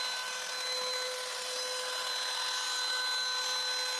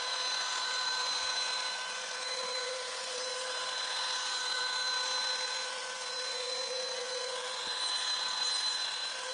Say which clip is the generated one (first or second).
second